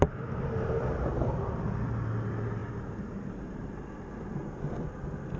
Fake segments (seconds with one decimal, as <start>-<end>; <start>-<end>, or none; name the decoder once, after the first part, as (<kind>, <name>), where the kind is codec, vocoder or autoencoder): 0.0-0.8 (vocoder, BigVGAN v2); 2.6-3.8